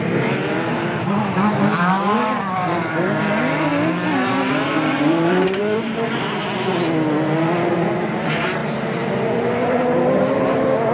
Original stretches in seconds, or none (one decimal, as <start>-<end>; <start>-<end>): 3.7-4.5; 6.4-7.7